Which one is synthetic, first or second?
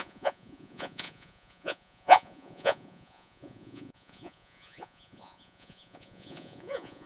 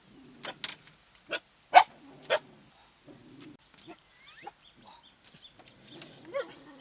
first